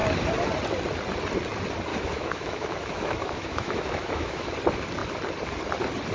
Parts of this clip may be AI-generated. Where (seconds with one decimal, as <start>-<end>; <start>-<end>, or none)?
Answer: 1.9-4.5